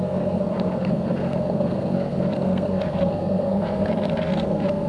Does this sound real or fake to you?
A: fake